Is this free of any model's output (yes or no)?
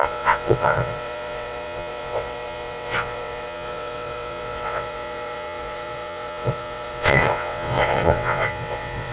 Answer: no